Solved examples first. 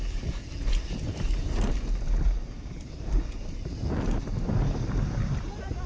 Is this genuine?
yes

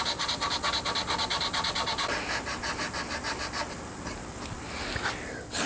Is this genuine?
yes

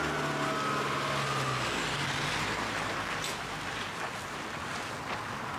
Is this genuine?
yes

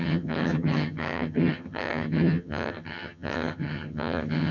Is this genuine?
no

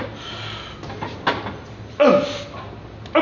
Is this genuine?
yes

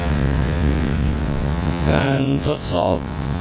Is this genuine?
no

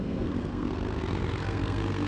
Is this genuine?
no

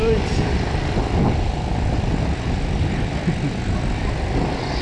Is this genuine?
yes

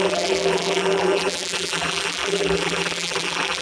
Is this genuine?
no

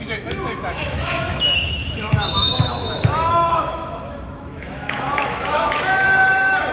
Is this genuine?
no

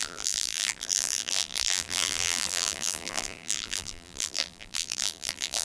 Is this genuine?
no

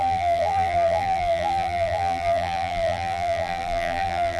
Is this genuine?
no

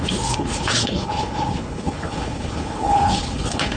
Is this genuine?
no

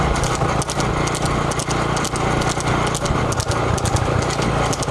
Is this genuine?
yes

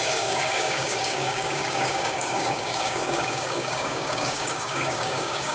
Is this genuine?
no